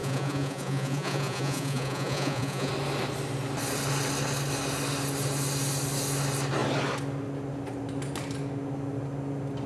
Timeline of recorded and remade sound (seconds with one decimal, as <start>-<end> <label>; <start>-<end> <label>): 0.0-2.7 remade; 2.7-9.7 recorded